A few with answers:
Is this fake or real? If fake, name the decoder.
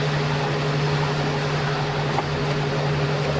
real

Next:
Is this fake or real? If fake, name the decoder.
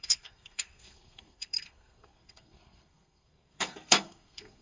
fake, codec, SNAC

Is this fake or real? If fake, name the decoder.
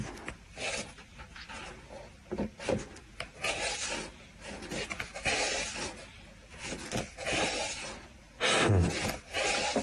real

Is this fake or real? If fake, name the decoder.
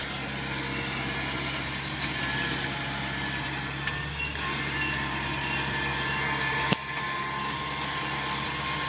real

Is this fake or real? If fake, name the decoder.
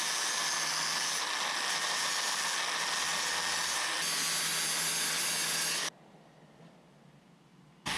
real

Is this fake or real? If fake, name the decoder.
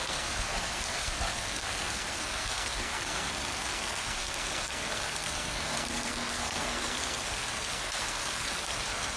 fake, codec, SNAC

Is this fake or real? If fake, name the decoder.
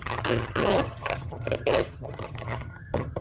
fake, vocoder, HiFi-GAN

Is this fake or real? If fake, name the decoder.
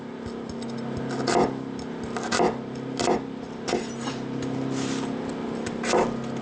real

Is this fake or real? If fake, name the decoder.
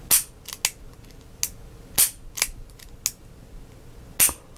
real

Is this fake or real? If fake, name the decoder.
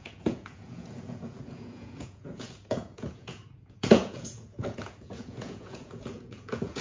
fake, vocoder, Vocos